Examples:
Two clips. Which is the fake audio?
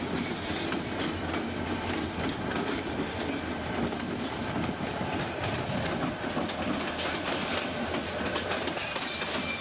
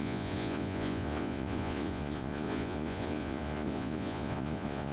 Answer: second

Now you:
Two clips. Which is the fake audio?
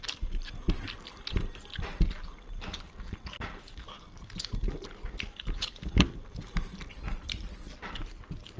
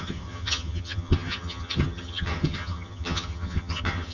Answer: second